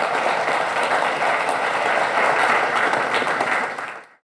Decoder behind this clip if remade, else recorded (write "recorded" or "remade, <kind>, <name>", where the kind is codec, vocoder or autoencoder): recorded